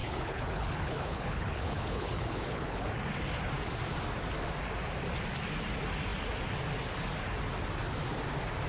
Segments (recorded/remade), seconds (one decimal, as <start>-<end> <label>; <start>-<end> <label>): 0.0-2.9 remade; 2.9-8.7 recorded